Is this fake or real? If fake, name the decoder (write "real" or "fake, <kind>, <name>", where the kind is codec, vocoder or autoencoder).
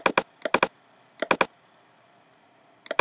real